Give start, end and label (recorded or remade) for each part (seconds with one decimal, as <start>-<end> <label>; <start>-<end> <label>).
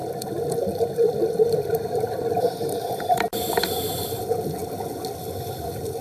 0.0-0.8 recorded; 0.8-4.6 remade; 4.6-5.2 recorded; 5.2-6.0 remade